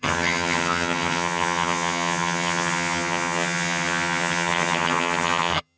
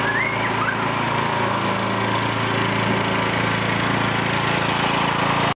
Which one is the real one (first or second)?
second